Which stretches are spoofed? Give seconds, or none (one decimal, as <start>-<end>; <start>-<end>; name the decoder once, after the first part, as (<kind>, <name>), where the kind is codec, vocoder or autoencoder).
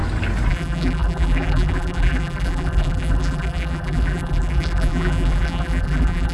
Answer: 0.5-6.3 (vocoder, BigVGAN v2)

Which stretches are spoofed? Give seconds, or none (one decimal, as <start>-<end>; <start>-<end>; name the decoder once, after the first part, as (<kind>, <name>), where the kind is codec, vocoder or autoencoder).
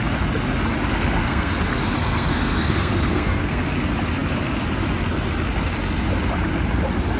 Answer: 0.9-1.5 (codec, SNAC); 2.0-3.6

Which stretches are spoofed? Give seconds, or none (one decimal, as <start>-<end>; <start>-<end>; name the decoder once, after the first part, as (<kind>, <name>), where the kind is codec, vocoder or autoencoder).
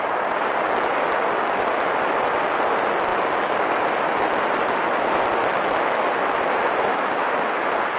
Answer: 5.4-6.1 (autoencoder, DAC-VAE); 6.9-7.6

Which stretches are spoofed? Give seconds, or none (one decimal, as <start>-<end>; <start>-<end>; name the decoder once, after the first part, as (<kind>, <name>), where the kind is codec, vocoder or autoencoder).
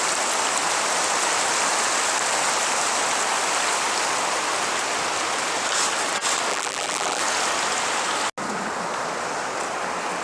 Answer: 6.5-7.2 (vocoder, BigVGAN v2)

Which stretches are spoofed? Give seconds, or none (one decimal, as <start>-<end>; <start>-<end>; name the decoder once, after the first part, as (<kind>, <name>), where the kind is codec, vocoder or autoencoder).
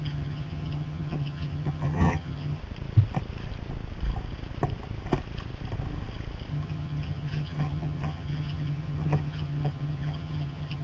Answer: 0.0-2.6 (vocoder, HiFi-GAN); 6.5-10.8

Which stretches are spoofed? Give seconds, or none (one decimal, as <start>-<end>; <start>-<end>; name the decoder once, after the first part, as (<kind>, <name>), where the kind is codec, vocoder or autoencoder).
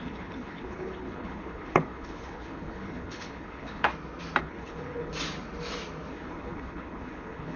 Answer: 0.0-3.9 (codec, HILCodec); 4.4-5.1; 6.1-7.6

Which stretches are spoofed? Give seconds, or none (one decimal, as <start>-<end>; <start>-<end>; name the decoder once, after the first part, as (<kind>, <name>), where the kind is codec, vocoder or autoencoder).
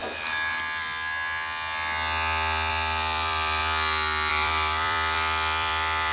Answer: 2.7-3.6 (vocoder, BigVGAN v2); 4.3-6.1